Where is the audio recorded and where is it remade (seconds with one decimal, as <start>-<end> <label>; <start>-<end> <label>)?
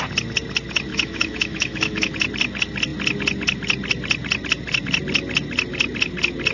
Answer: 0.0-0.9 recorded; 0.9-2.1 remade; 2.1-6.5 recorded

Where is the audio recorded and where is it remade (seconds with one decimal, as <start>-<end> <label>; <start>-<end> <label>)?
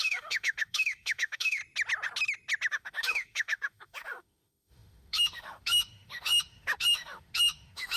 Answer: 0.0-1.6 remade; 1.6-2.7 recorded; 2.7-8.0 remade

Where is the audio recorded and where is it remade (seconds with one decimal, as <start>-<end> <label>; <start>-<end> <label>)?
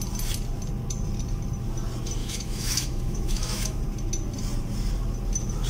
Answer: 0.0-2.2 recorded; 2.2-3.8 remade; 3.8-5.7 recorded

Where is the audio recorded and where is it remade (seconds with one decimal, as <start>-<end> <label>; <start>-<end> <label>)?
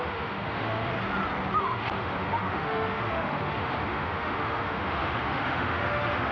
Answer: 0.0-0.9 remade; 0.9-1.6 recorded; 1.6-6.3 remade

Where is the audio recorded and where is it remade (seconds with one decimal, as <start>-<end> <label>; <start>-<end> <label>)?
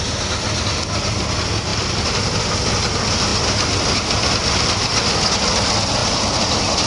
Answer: 0.0-6.9 recorded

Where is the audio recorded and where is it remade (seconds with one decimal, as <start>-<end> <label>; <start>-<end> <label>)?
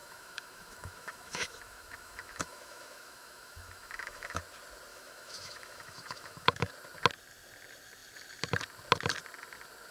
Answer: 0.0-4.4 remade; 4.4-4.9 recorded; 4.9-6.7 remade; 6.7-9.9 recorded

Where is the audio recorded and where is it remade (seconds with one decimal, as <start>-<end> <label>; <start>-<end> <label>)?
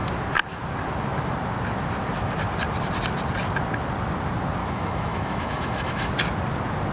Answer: 0.0-4.6 recorded; 4.6-6.1 remade; 6.1-6.9 recorded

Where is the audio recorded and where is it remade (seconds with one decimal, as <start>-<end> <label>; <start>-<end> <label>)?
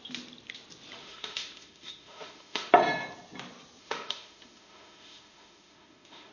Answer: 0.0-1.0 recorded; 1.0-2.7 remade; 2.7-3.8 recorded; 3.8-6.3 remade